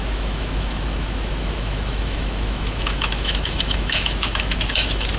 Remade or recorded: remade